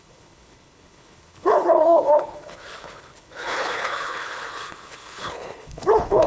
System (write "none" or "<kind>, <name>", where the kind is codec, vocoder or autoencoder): codec, HILCodec